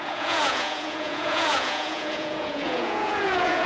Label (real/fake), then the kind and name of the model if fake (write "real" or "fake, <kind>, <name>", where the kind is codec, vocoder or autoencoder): fake, vocoder, Vocos